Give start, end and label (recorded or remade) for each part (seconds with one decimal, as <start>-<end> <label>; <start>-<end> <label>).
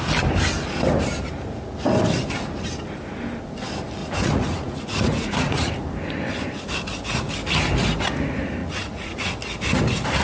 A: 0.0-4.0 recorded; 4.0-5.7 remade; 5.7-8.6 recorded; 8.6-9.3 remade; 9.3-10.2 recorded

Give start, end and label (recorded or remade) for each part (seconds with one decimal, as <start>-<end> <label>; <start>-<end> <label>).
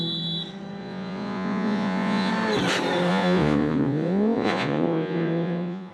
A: 0.0-0.8 recorded; 0.8-2.3 remade; 2.3-3.1 recorded; 3.1-5.9 remade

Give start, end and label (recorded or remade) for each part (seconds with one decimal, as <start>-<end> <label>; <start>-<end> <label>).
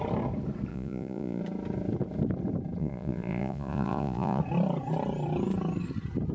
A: 0.0-0.7 recorded; 0.7-1.4 remade; 1.4-2.8 recorded; 2.8-4.4 remade; 4.4-6.3 recorded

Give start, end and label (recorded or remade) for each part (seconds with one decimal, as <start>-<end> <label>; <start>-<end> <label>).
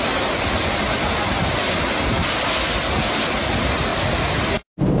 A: 0.0-5.0 recorded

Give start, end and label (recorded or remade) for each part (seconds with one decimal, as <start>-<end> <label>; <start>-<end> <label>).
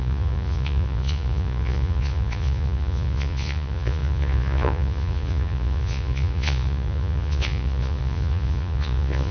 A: 0.0-9.3 remade